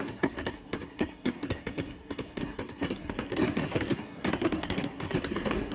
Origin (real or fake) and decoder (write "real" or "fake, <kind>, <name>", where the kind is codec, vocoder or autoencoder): fake, codec, SNAC